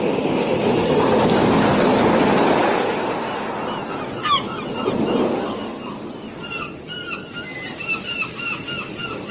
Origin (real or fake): real